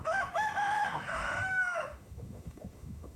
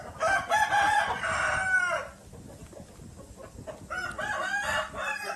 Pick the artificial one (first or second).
first